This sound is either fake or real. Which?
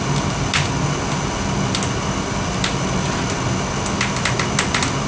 real